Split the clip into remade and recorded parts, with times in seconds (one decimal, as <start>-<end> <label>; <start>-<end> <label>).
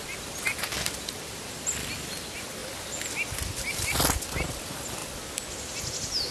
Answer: 0.0-6.3 recorded